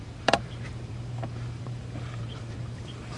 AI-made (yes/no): yes